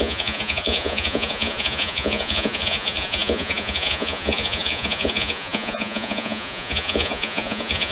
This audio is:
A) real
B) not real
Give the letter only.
B